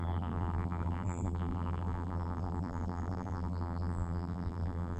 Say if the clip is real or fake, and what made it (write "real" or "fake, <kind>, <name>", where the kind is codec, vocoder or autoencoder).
fake, vocoder, BigVGAN v2